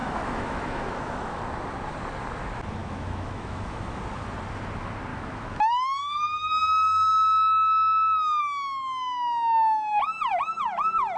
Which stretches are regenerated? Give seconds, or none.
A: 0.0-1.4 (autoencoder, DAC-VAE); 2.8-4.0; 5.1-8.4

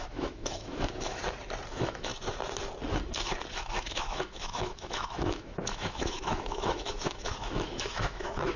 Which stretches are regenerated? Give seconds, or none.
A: 0.0-1.2 (autoencoder, DAC-VAE); 1.7-2.1; 3.5-8.6